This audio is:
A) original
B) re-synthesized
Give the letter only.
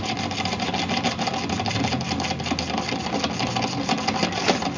A